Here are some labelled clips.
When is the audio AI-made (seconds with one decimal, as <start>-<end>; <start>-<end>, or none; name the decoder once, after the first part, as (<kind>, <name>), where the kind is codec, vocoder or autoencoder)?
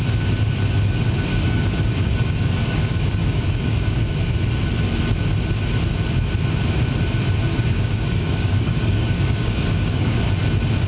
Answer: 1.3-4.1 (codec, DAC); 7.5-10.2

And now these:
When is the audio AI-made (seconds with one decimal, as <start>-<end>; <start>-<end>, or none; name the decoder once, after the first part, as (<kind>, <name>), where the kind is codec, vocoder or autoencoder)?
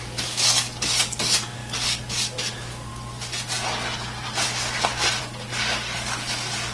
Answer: 0.0-2.9 (codec, DAC); 5.2-6.7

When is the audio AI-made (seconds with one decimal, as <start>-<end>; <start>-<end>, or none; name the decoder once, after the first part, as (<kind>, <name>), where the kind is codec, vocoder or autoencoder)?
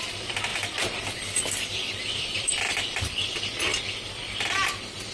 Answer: 0.5-2.8 (vocoder, BigVGAN v2)